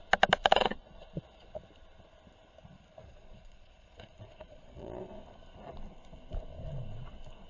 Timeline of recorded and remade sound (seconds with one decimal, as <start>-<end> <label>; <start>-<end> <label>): 0.0-0.4 recorded; 0.4-1.6 remade; 1.6-3.0 recorded; 3.0-5.0 remade; 5.0-7.5 recorded